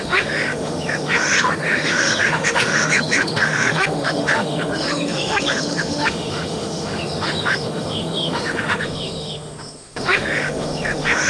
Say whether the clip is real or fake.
fake